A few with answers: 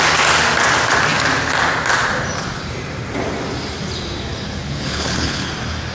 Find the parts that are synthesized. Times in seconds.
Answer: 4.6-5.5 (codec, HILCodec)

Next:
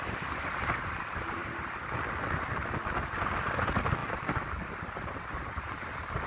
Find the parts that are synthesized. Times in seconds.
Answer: none